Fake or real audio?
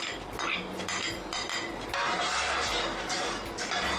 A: real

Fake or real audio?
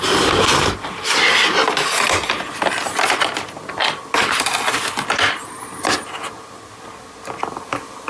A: real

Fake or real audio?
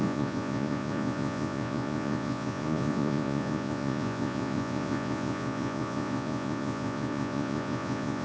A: fake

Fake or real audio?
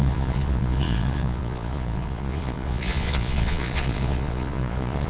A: fake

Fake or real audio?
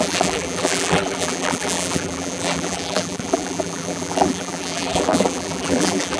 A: fake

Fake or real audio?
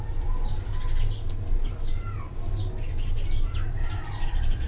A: real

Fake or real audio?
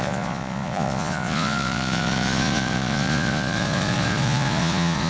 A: fake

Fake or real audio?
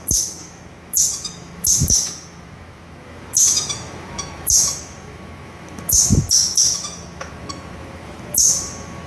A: fake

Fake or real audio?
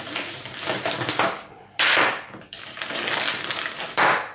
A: real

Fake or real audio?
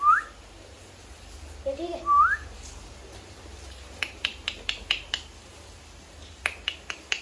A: real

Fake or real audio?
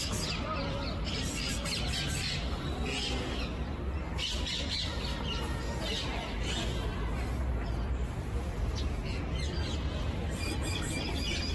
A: real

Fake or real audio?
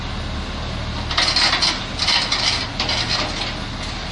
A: real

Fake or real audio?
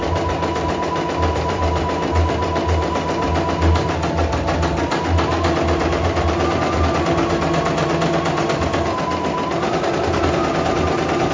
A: real